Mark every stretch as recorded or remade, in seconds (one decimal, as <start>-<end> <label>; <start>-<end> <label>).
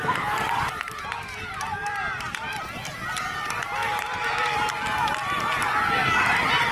0.0-6.7 recorded